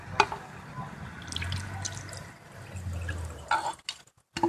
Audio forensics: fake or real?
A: real